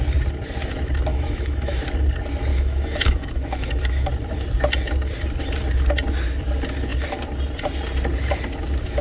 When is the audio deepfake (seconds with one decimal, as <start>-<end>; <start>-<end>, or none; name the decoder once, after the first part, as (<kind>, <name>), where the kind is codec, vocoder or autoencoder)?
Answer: 1.1-1.8 (autoencoder, DAC-VAE); 2.5-4.1